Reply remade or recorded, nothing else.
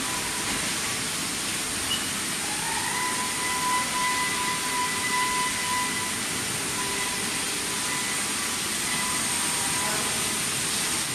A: recorded